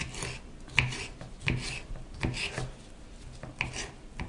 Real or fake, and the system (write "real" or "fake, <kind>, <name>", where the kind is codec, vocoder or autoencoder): real